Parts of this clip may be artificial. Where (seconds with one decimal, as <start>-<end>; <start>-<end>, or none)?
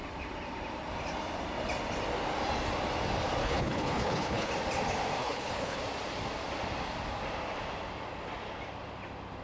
3.4-4.5; 5.2-5.8